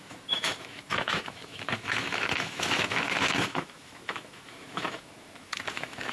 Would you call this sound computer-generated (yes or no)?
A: yes